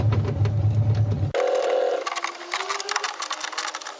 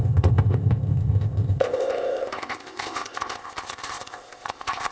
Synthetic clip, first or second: second